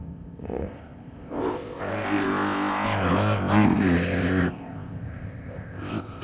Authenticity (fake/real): fake